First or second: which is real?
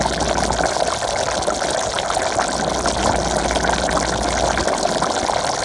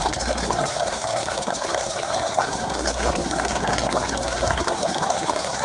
first